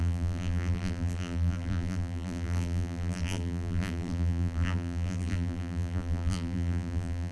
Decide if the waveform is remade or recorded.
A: remade